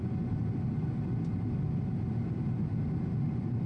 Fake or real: real